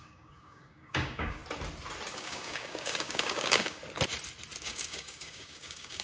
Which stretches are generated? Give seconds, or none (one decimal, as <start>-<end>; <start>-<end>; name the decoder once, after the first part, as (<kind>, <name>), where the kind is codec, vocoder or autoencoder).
0.0-1.4 (codec, DAC); 2.1-3.8; 4.6-6.0